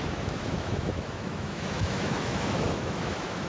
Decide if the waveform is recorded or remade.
remade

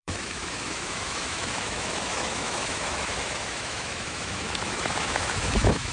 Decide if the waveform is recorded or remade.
remade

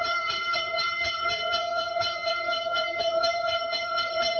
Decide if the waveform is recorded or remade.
remade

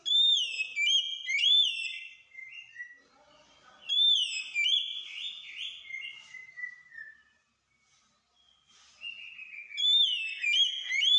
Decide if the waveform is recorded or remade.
recorded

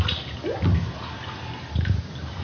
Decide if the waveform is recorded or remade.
recorded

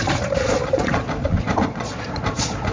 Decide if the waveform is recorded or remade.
remade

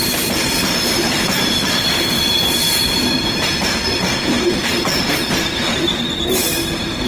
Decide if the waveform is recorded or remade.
remade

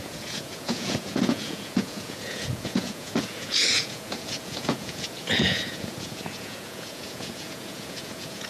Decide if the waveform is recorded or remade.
remade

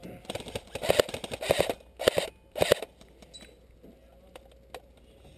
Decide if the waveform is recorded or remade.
recorded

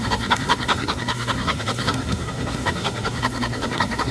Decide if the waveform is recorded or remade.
remade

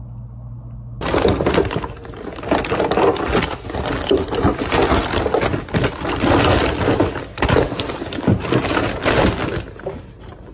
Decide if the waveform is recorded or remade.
recorded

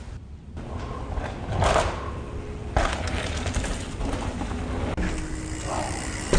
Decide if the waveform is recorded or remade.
recorded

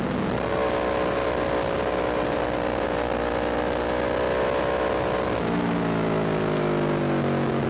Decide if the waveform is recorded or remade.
recorded